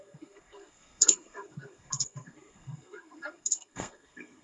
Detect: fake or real fake